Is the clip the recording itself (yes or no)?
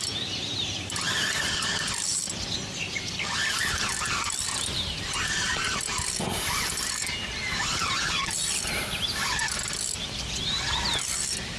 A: no